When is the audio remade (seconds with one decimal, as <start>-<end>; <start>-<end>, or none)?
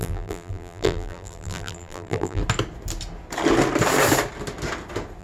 0.0-2.4